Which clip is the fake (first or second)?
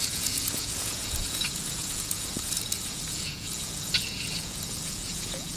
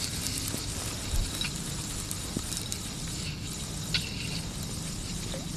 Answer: first